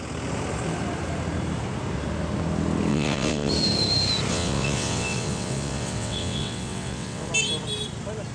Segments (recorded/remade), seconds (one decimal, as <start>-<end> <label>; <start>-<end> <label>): 0.0-2.9 recorded; 2.9-3.5 remade; 3.5-4.3 recorded; 4.3-7.3 remade; 7.3-8.3 recorded